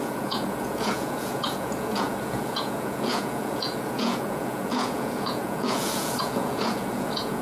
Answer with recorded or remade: remade